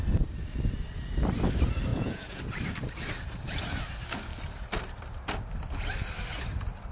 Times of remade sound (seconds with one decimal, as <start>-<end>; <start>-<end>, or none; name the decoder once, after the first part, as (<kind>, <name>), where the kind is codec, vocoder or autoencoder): 1.9-2.4 (vocoder, Vocos)